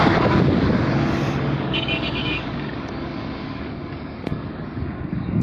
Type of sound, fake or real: fake